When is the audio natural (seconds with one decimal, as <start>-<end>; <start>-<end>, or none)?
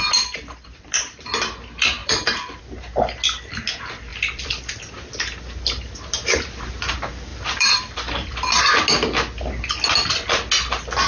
0.0-0.7; 1.3-2.0; 2.6-4.1; 4.7-7.3; 8.6-11.1